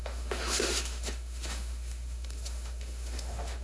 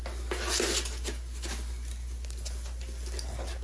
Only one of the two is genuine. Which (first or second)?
second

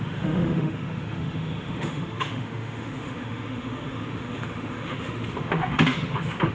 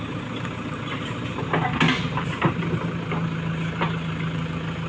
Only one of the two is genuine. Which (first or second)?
second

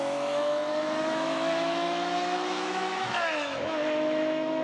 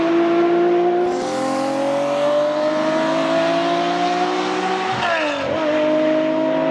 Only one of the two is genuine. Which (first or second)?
second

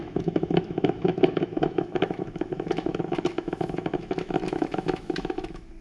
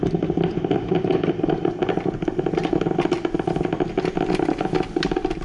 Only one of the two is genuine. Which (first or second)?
second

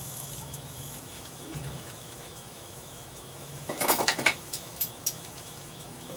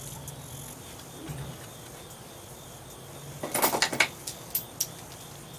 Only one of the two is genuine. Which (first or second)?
second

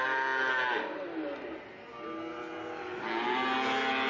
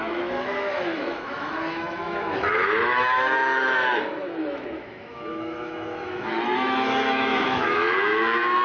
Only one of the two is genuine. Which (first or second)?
first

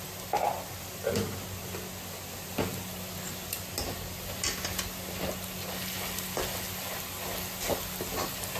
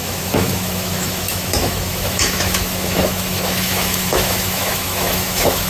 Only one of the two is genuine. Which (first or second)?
first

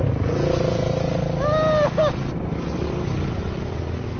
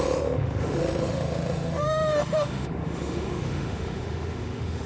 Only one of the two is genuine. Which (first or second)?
first